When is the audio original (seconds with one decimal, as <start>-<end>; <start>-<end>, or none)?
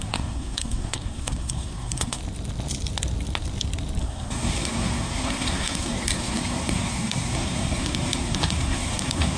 2.2-4.0